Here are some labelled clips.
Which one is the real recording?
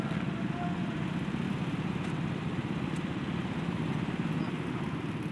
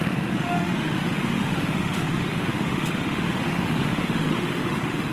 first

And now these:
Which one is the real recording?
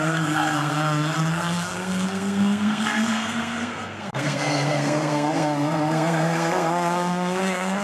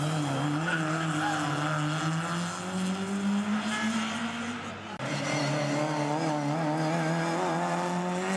second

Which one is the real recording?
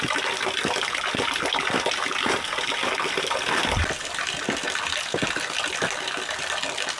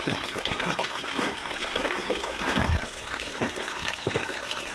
first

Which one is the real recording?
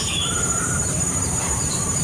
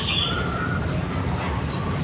second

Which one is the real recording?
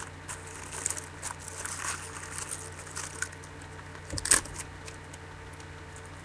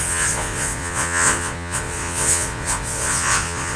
first